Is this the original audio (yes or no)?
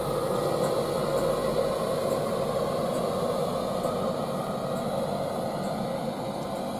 yes